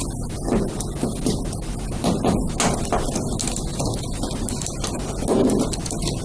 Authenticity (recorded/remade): recorded